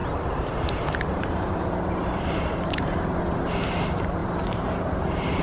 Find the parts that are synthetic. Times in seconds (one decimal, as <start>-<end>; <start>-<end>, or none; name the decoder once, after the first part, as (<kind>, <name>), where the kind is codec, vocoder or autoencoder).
0.0-3.2 (vocoder, BigVGAN v2); 4.2-5.4